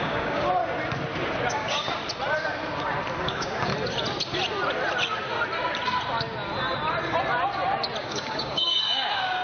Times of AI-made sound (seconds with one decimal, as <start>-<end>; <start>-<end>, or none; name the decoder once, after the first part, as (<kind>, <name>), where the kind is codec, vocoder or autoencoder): 0.0-0.6 (codec, DAC); 1.5-2.0; 3.2-3.7; 8.0-9.4

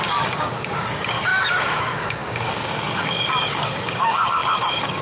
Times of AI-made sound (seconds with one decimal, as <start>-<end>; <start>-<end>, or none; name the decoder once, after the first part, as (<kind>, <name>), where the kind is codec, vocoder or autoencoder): 0.0-5.0 (codec, DAC)

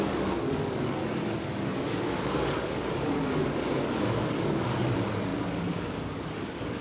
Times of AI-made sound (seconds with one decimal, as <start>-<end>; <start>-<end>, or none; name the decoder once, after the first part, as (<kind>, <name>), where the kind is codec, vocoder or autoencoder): 0.0-6.8 (codec, DAC)

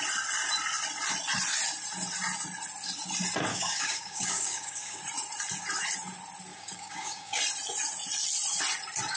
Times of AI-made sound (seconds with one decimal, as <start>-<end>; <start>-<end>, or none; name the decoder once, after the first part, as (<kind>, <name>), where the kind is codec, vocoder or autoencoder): 3.5-5.0 (codec, DAC); 6.5-7.4

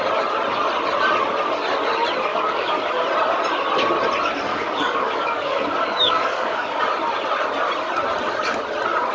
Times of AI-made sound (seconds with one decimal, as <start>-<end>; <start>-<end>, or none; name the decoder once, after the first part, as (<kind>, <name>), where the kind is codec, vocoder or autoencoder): 2.3-2.8 (codec, DAC); 4.5-6.8

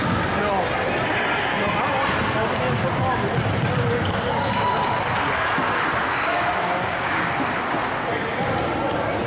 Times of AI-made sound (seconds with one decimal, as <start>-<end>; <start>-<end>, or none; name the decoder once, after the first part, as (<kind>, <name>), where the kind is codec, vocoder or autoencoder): 6.0-7.3 (codec, DAC)